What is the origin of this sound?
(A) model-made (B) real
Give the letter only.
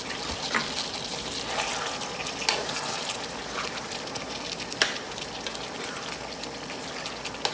B